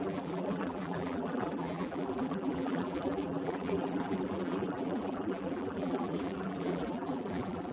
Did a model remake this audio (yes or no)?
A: yes